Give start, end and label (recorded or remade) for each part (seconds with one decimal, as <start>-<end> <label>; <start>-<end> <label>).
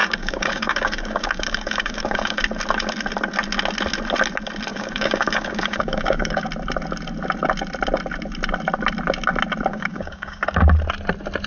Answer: 0.0-2.4 remade; 2.4-4.7 recorded; 4.7-6.5 remade; 6.5-9.7 recorded; 9.7-10.4 remade; 10.4-11.5 recorded